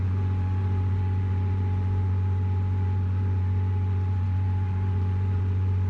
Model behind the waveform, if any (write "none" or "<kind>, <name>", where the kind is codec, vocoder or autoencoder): vocoder, Vocos